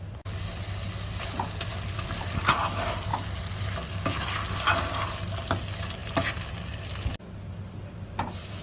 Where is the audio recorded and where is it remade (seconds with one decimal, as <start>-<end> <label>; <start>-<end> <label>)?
0.0-8.6 recorded